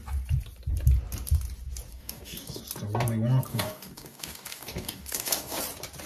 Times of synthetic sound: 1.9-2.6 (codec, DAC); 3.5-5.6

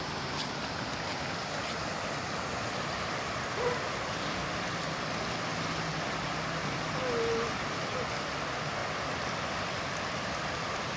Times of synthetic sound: none

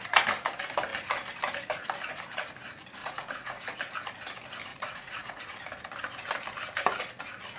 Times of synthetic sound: 3.0-3.6 (vocoder, Vocos); 4.7-5.4

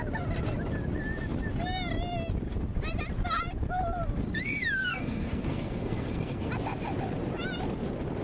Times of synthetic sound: 4.9-6.5 (codec, SNAC)

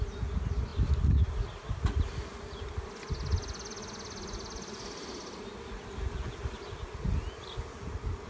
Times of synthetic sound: none